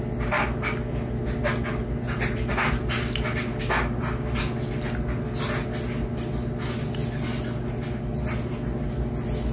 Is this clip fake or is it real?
real